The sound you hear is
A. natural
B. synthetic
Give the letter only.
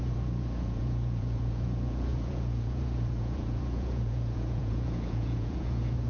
B